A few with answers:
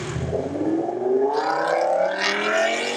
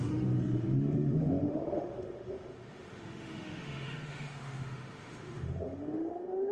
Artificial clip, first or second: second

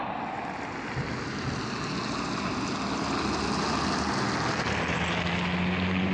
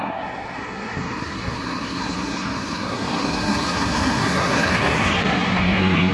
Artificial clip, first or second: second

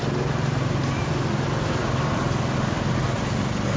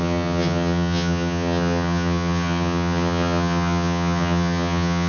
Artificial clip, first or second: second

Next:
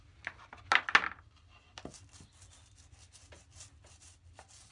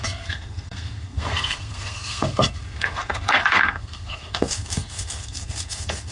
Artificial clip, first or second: second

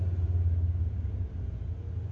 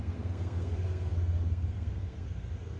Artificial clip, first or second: second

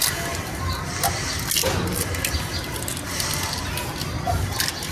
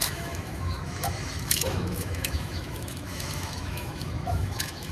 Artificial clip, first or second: second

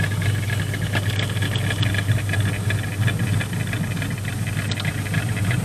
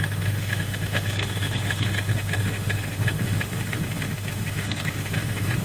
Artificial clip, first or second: second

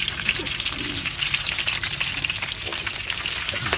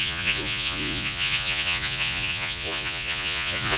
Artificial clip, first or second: second